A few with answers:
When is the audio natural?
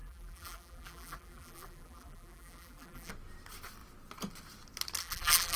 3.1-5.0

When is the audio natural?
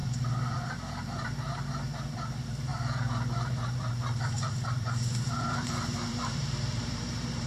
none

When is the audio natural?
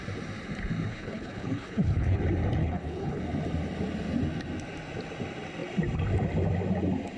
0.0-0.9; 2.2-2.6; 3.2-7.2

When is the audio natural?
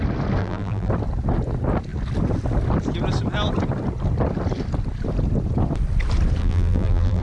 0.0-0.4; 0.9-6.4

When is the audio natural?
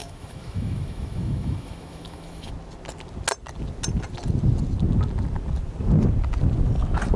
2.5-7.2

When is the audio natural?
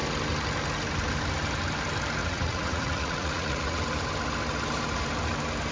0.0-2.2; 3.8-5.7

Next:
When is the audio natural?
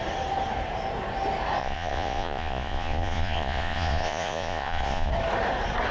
0.0-1.6; 5.1-5.9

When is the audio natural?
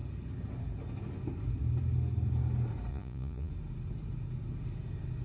0.0-2.9; 3.5-5.2